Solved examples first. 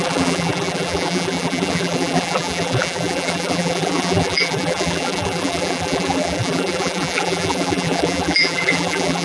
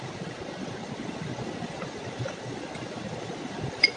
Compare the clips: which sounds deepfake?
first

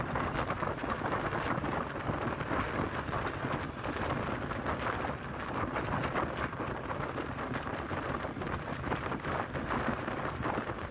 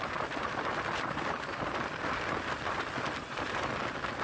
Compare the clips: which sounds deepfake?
second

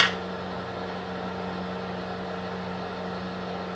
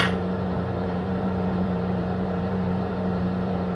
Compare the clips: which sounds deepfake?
second